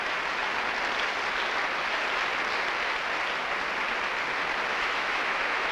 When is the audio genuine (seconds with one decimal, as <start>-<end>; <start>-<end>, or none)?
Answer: 0.0-4.7